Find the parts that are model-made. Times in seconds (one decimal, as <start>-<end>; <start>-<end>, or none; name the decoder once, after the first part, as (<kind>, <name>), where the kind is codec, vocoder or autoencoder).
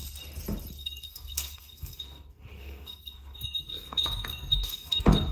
0.8-5.3 (codec, SNAC)